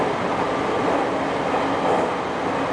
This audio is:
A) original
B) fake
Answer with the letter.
A